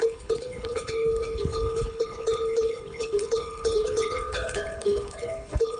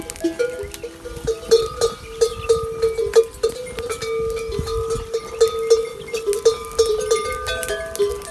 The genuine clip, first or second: second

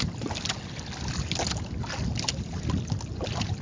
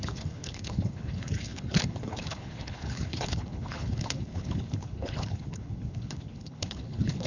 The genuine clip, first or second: first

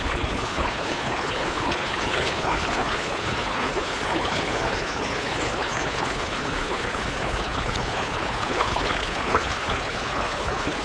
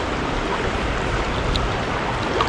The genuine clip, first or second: second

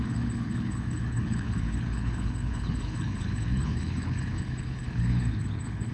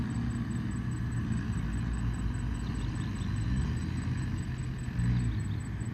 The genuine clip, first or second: second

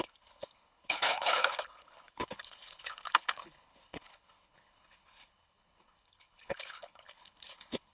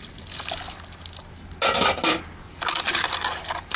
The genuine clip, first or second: second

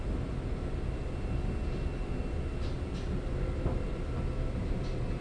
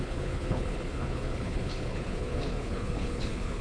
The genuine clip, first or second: first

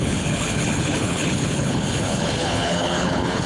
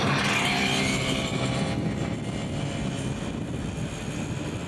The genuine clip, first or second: second